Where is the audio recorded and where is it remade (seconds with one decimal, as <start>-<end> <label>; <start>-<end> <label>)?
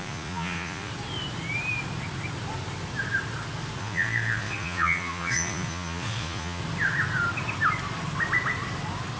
0.0-0.9 remade; 0.9-3.8 recorded; 3.8-6.6 remade; 6.6-9.2 recorded